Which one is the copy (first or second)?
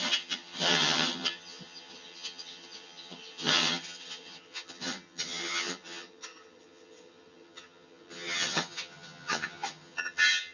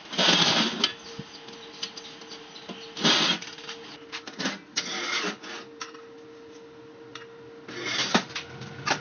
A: first